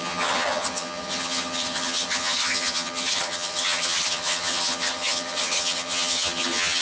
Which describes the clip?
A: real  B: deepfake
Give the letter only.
B